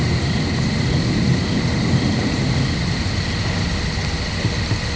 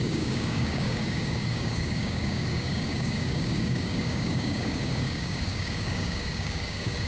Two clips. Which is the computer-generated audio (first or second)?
second